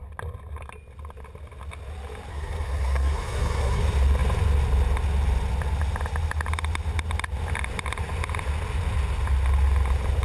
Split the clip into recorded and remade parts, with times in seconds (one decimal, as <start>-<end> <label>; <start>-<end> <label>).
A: 0.0-2.3 recorded; 2.3-3.8 remade; 3.8-10.2 recorded